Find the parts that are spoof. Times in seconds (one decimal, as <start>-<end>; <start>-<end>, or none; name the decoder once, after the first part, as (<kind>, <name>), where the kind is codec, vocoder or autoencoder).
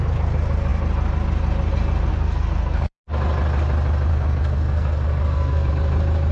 2.1-3.0 (codec, SNAC); 4.1-5.7